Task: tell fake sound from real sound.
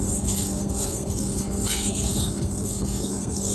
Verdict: fake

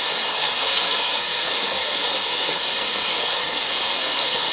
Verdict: fake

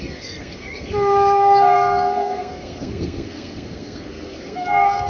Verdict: fake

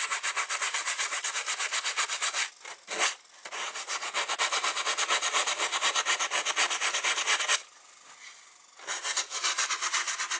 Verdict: real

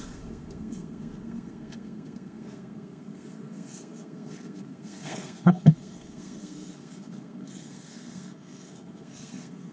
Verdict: fake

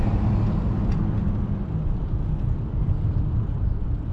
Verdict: real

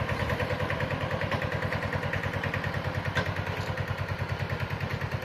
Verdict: real